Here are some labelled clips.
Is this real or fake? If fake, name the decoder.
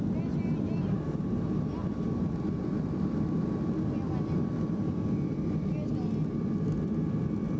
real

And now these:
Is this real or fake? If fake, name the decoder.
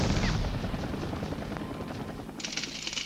real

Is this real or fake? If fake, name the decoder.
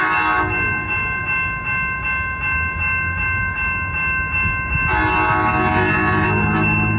real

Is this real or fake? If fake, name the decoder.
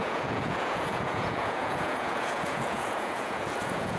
fake, vocoder, Vocos